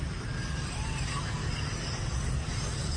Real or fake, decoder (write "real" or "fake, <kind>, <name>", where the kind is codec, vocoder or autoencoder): real